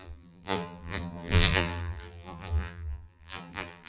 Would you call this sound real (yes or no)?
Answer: no